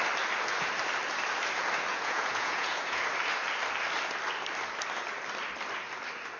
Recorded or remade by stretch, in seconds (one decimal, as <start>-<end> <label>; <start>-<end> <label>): 0.0-1.9 recorded; 1.9-3.1 remade; 3.1-6.4 recorded